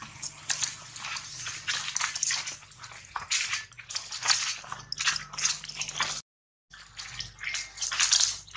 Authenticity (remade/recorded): recorded